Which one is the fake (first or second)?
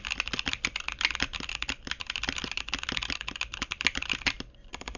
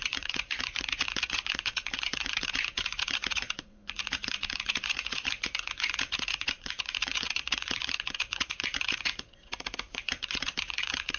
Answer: second